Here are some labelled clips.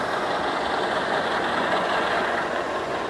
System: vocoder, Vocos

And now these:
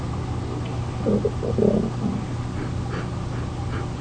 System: none